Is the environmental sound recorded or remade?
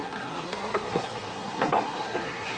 remade